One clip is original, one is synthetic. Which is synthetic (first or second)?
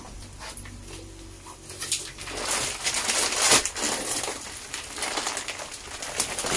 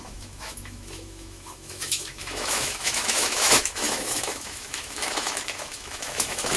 second